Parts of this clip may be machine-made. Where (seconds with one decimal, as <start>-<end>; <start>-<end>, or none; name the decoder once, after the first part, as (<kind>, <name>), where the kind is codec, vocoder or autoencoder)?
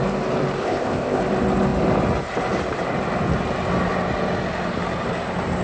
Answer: 0.6-1.2 (codec, ZipCodec)